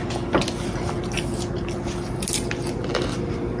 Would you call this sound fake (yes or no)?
no